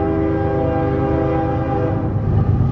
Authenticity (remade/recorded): recorded